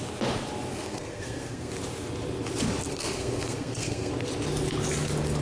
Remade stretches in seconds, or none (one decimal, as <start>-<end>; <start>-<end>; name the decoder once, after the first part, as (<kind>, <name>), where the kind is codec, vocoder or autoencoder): 0.7-1.7 (codec, SNAC); 2.9-4.1

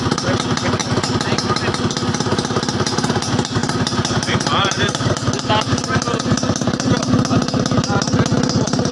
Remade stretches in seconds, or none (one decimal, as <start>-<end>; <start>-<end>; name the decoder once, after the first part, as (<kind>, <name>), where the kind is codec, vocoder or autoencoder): 3.6-5.1 (vocoder, BigVGAN v2)

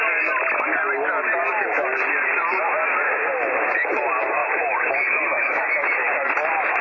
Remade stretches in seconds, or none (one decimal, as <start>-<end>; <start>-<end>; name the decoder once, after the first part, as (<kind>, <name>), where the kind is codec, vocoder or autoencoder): none

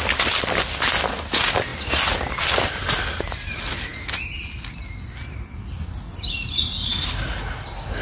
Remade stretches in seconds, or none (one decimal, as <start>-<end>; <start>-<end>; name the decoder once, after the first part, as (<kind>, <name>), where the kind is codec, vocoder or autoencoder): none

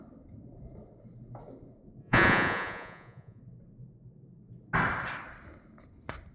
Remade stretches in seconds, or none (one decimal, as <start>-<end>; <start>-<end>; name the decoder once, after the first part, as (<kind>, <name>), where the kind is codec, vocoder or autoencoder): 2.0-3.4 (vocoder, Vocos)